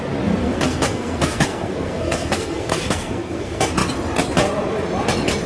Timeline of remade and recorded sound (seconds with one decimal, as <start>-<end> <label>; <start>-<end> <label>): 0.0-0.4 recorded; 0.4-3.7 remade; 3.7-5.5 recorded